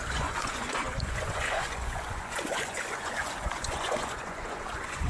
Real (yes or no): no